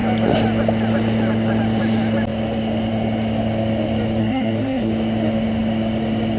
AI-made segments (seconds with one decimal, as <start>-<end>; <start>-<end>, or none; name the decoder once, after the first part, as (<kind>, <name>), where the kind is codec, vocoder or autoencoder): 4.2-4.9 (codec, SNAC)